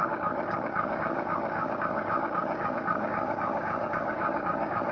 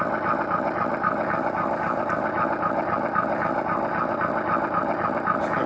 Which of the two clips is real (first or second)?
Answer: second